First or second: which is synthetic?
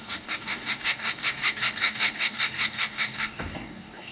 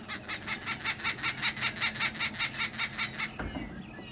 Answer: first